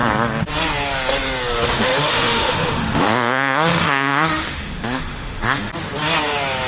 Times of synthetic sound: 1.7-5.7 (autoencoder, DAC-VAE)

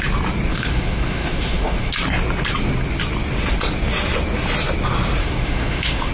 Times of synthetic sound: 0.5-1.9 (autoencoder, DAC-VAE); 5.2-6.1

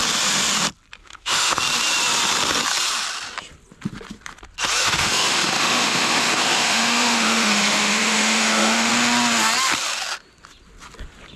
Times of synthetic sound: 1.0-1.6 (autoencoder, DAC-VAE); 4.8-8.9

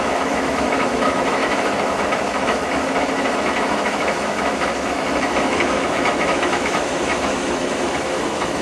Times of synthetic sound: 0.0-8.6 (autoencoder, DAC-VAE)

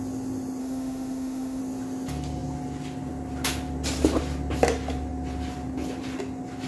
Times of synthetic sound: 0.6-1.6 (autoencoder, DAC-VAE)

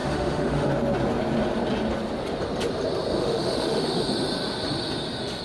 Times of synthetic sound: 0.0-0.7 (autoencoder, DAC-VAE); 3.2-4.0

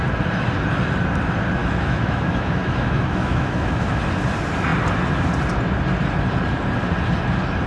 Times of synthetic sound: 1.6-4.0 (autoencoder, DAC-VAE)